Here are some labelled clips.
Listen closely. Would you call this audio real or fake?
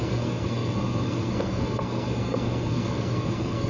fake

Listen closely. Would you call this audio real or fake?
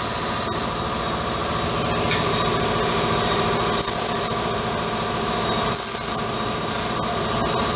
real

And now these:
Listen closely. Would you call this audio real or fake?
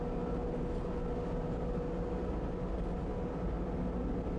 real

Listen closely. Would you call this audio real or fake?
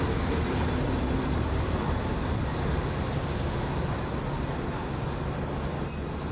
real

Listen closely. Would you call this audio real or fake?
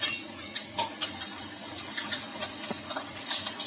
fake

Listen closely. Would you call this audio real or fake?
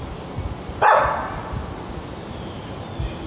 real